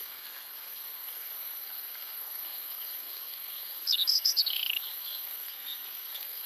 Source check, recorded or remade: remade